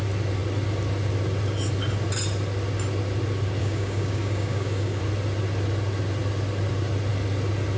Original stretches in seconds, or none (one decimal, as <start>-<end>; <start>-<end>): 0.0-3.6; 5.0-7.8